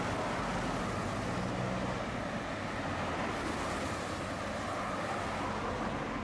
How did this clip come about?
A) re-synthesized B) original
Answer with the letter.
B